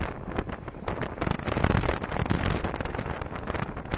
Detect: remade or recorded recorded